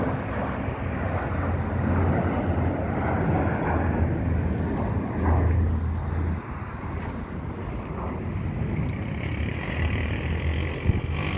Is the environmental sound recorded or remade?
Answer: recorded